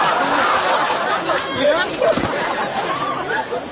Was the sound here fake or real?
real